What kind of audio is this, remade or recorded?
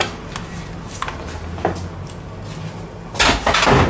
recorded